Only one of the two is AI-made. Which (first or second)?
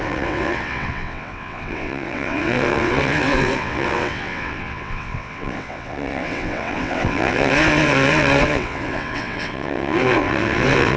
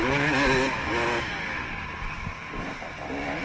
first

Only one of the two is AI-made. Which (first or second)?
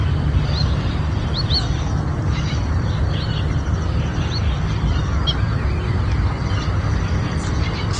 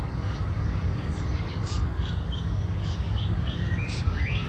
second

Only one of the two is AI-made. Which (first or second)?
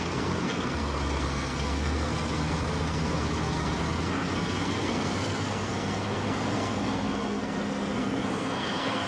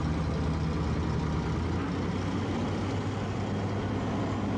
first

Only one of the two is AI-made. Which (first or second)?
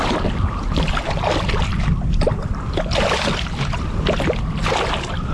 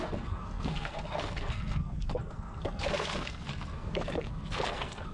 second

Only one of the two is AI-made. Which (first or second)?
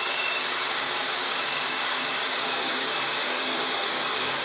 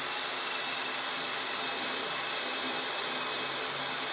first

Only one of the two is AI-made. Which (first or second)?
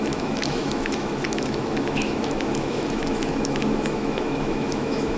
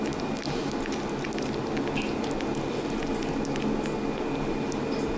first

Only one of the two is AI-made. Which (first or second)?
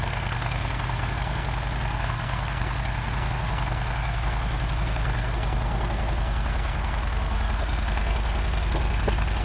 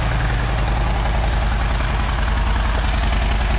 first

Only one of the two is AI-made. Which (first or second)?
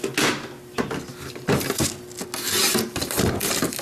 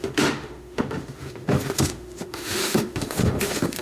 second